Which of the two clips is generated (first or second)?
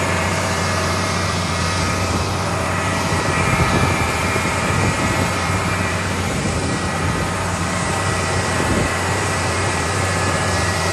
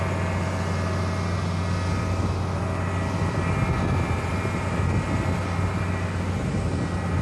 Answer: first